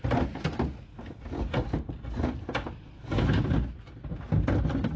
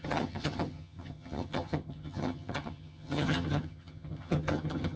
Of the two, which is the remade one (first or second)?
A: second